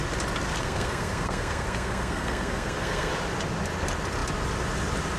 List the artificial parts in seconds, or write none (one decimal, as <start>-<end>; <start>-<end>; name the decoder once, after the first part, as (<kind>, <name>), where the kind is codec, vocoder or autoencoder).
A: 0.6-3.1 (codec, SNAC)